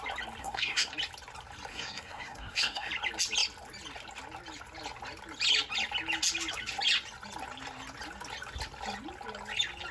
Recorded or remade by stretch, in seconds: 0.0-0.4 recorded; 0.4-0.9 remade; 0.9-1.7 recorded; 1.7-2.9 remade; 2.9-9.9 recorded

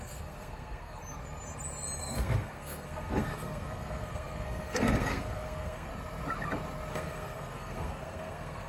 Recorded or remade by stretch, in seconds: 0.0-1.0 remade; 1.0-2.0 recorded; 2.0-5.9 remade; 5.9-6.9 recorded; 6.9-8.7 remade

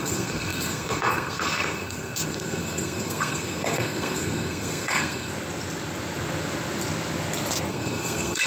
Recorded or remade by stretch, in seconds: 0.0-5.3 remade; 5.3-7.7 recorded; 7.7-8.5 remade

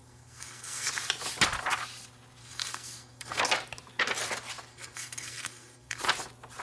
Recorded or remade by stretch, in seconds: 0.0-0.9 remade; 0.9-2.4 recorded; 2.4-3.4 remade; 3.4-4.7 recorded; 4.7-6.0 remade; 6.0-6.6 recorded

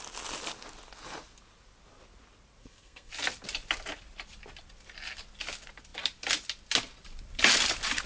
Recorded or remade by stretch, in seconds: 0.0-2.6 recorded; 2.6-3.1 remade; 3.1-8.1 recorded